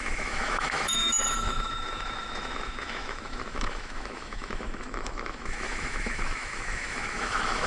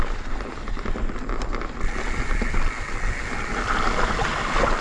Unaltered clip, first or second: second